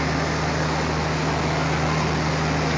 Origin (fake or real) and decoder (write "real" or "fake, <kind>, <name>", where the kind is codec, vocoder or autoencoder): real